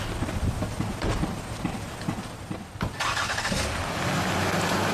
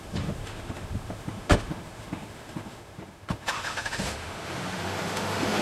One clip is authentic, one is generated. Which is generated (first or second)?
second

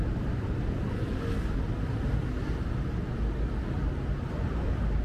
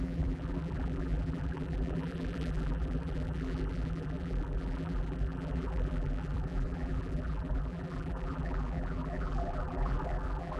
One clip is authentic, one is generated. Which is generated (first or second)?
second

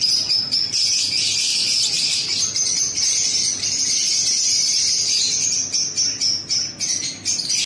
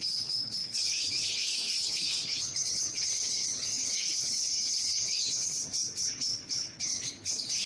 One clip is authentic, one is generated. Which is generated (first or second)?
second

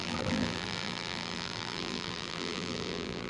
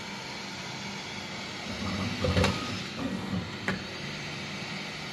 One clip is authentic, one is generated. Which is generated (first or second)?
first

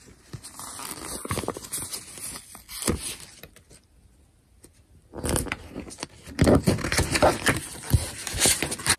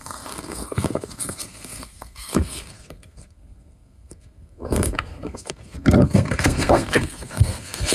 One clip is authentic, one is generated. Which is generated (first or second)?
second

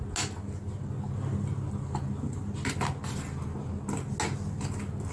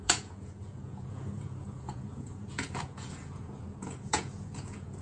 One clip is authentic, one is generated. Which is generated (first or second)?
second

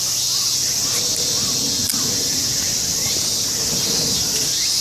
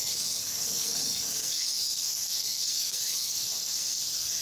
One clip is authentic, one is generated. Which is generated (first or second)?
second